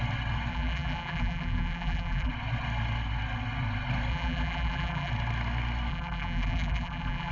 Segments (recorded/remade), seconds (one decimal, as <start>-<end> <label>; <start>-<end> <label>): 0.0-0.5 recorded; 0.5-2.3 remade; 2.3-4.1 recorded; 4.1-5.1 remade; 5.1-5.9 recorded; 5.9-7.3 remade